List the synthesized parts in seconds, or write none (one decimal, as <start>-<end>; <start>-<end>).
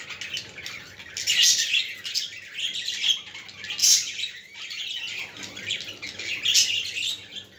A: 3.8-4.8